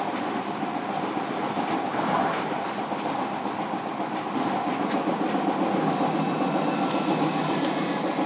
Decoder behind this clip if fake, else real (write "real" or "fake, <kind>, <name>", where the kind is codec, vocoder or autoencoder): real